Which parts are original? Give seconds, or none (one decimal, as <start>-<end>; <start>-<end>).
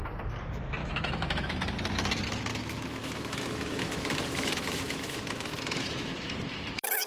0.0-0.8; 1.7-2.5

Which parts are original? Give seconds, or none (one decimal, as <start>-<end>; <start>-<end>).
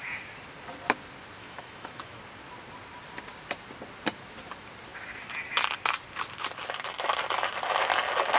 0.0-1.4; 2.2-8.4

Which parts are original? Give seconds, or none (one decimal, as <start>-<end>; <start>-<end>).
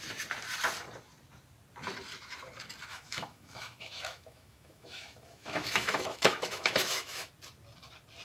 0.0-2.9; 7.3-8.2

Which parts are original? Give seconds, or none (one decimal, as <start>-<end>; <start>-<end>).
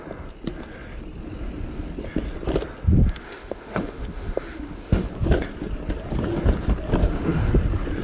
0.0-3.2; 5.1-7.0; 7.5-8.0